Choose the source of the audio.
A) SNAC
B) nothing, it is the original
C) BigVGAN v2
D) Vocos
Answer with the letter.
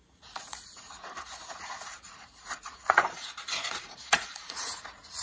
D